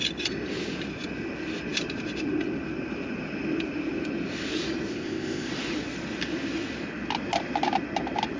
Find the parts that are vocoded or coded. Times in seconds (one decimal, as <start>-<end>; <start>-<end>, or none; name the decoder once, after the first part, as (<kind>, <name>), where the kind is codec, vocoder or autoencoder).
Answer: 4.9-5.5 (codec, ZipCodec)

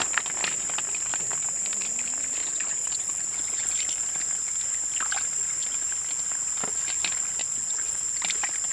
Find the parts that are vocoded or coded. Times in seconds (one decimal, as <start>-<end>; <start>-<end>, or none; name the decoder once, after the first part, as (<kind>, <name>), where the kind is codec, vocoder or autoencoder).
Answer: 2.4-3.7 (vocoder, Vocos); 7.4-8.0

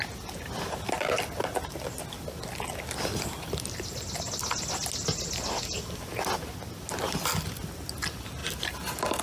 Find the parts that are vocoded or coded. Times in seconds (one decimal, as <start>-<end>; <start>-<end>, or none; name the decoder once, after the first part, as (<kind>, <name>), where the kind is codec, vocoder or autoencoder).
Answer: none

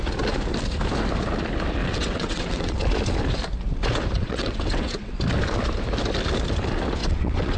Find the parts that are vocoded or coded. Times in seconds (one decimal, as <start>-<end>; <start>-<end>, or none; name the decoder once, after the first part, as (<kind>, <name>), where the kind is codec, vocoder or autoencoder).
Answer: 1.8-2.8 (vocoder, WaveNeXt); 4.2-5.2; 7.0-7.6

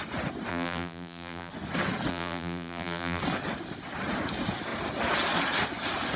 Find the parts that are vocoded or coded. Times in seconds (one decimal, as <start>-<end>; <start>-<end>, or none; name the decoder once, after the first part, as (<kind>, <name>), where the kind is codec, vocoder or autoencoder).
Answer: 0.5-1.5 (vocoder, BigVGAN v2); 2.1-3.2

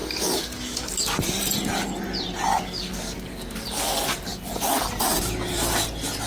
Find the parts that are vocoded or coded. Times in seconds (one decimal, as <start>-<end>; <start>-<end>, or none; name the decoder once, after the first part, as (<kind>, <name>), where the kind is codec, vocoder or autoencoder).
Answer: 0.0-1.2 (codec, DAC); 2.5-3.9